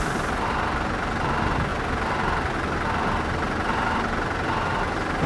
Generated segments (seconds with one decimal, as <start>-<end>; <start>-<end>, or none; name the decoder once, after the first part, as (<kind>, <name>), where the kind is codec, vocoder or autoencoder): none

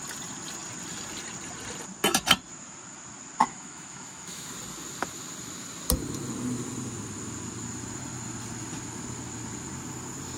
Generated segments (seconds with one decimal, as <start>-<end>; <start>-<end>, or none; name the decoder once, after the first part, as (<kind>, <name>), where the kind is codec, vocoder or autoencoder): 3.4-4.5 (autoencoder, DAC-VAE)

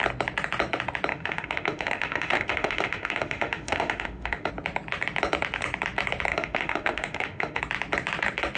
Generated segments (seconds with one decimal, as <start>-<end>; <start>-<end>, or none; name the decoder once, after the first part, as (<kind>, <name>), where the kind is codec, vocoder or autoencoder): 1.1-4.5 (autoencoder, DAC-VAE); 6.3-7.6

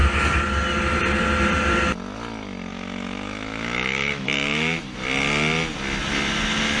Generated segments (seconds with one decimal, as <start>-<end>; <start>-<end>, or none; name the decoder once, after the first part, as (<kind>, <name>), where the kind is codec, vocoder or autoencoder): 2.7-4.8 (autoencoder, DAC-VAE)